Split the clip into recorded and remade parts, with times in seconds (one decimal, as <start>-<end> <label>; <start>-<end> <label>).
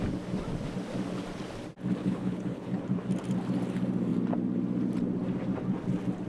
0.0-2.0 recorded; 2.0-2.8 remade; 2.8-6.3 recorded